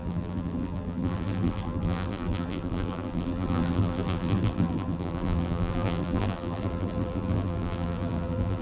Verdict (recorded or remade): remade